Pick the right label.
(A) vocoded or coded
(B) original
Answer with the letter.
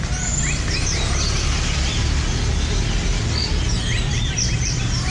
B